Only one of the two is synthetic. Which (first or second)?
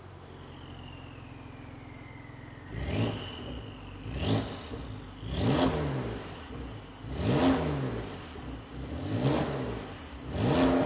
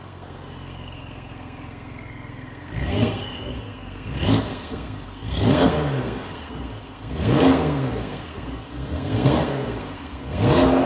second